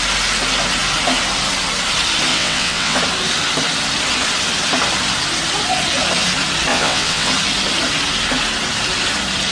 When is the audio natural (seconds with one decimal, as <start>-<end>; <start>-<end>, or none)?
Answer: 0.0-2.3; 3.0-6.7; 7.3-9.5